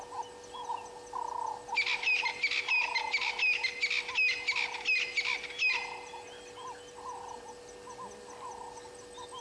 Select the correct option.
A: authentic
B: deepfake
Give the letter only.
A